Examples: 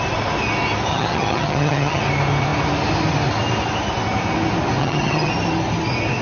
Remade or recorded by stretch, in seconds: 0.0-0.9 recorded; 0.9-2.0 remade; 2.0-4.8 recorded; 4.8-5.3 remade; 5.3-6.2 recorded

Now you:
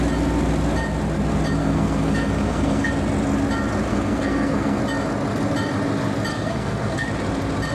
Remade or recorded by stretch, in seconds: 0.0-1.6 recorded; 1.6-2.9 remade; 2.9-3.9 recorded; 3.9-4.8 remade; 4.8-6.3 recorded; 6.3-7.1 remade; 7.1-7.7 recorded

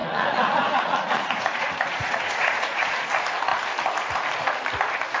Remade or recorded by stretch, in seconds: 0.0-3.1 remade; 3.1-5.2 recorded

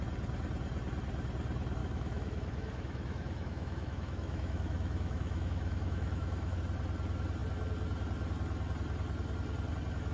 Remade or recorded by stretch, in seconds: 0.0-1.8 recorded; 1.8-6.6 remade; 6.6-10.1 recorded

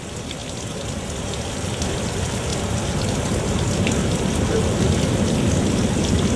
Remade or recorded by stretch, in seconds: 0.0-6.4 recorded